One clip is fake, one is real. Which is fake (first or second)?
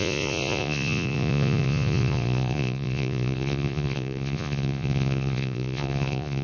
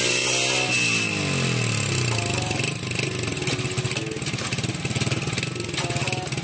first